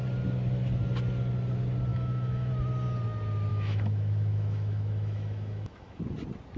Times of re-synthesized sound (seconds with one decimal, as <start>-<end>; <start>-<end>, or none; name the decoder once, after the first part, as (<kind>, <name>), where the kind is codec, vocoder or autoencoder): 1.9-2.5 (autoencoder, DAC-VAE); 3.5-6.0